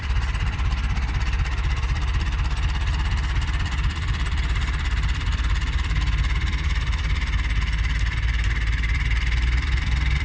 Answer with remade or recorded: remade